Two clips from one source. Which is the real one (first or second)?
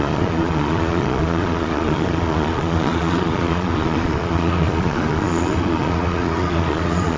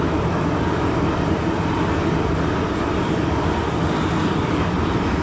second